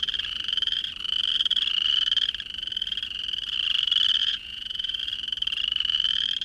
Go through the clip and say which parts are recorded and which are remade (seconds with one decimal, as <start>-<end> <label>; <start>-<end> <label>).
0.0-4.2 recorded; 4.2-5.0 remade; 5.0-6.4 recorded